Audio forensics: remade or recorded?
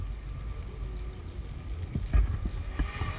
recorded